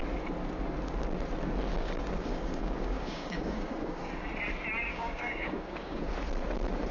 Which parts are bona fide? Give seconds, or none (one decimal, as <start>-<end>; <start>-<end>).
0.0-1.7; 4.1-4.9; 6.0-6.9